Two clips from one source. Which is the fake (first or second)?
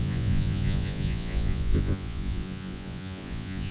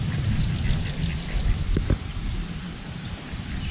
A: first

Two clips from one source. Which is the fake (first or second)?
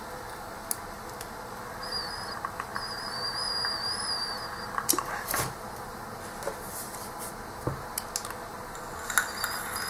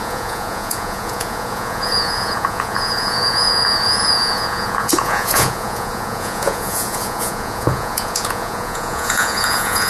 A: second